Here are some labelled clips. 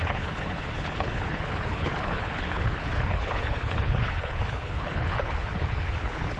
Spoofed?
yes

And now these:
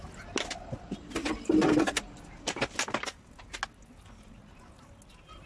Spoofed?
no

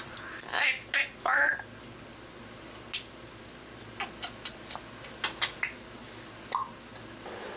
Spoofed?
no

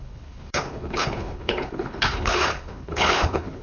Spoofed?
yes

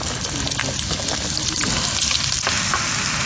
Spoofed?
no